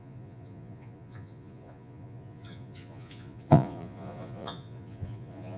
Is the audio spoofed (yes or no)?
yes